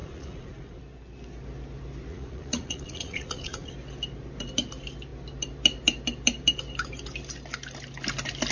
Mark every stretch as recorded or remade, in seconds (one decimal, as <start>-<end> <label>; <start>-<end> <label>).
0.0-0.8 remade; 0.8-2.1 recorded; 2.1-3.7 remade; 3.7-8.5 recorded